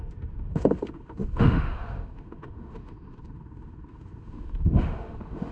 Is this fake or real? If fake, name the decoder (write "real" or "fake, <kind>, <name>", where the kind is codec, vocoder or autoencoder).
fake, autoencoder, DAC-VAE